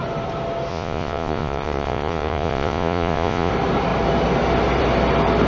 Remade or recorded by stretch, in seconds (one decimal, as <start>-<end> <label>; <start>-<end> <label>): 0.0-0.7 recorded; 0.7-3.5 remade; 3.5-5.5 recorded